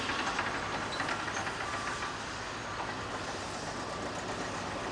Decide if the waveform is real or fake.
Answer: real